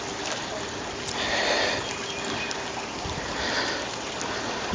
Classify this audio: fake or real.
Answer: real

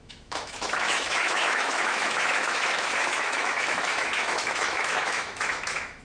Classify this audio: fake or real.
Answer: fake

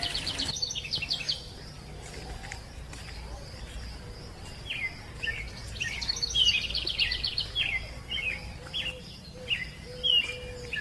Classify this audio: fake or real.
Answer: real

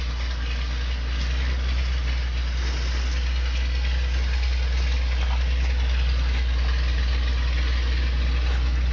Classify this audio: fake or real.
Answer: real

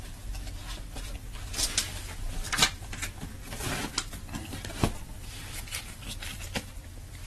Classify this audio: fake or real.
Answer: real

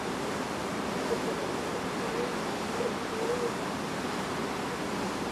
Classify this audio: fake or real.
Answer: real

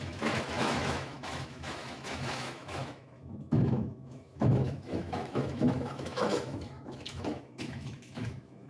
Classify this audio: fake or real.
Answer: fake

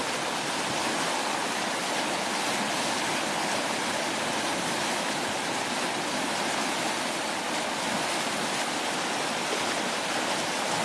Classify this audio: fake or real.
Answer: real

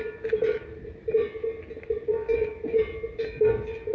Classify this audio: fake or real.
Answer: real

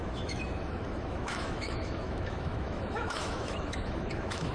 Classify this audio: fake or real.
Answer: fake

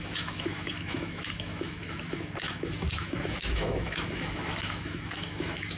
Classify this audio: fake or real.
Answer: fake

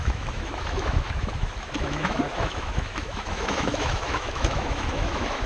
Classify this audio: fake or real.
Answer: fake